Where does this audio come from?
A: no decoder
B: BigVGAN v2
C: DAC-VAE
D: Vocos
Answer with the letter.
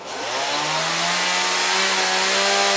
A